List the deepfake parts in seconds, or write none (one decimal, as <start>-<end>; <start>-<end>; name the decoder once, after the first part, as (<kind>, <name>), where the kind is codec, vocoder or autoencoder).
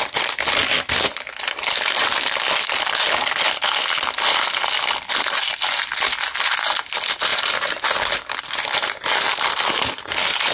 none